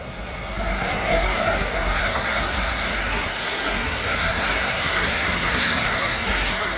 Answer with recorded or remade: remade